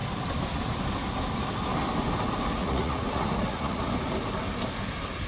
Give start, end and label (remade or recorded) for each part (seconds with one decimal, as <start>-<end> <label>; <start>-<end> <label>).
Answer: 0.0-2.6 recorded; 2.6-3.9 remade; 3.9-5.3 recorded